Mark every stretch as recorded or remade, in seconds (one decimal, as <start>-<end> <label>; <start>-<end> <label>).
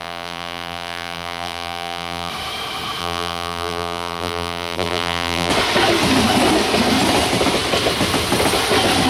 0.0-2.3 remade; 2.3-3.0 recorded; 3.0-5.5 remade; 5.5-9.1 recorded